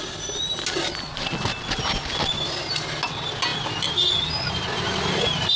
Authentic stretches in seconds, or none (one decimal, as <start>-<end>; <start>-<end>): 0.0-5.6